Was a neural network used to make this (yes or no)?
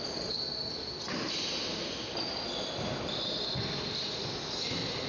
no